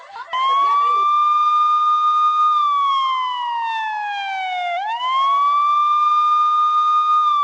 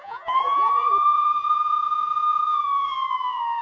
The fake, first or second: second